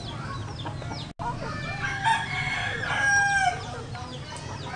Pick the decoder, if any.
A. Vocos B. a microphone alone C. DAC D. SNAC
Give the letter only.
B